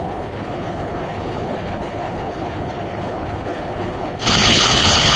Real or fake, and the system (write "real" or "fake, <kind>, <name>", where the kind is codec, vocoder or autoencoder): fake, codec, HILCodec